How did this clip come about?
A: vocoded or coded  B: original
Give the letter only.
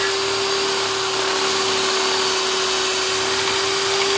B